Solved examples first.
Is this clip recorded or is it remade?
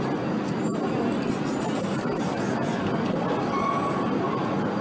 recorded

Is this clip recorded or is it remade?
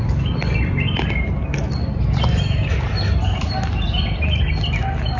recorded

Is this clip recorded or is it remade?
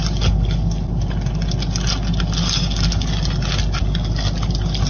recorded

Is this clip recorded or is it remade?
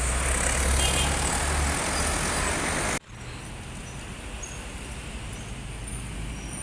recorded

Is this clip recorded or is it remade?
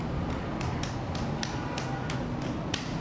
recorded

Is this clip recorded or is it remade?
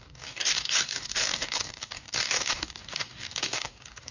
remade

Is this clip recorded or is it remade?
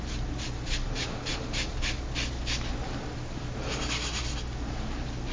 recorded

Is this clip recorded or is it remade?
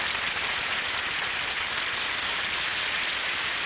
recorded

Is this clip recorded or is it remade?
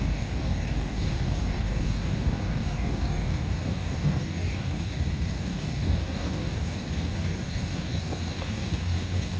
remade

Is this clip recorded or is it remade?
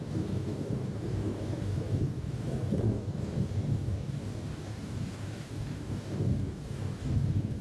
remade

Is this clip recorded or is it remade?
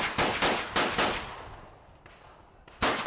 recorded